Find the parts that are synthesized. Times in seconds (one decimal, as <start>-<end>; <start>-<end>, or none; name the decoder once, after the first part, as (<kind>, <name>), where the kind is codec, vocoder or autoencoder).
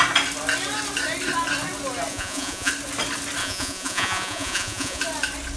2.1-2.7 (vocoder, Vocos); 3.4-5.0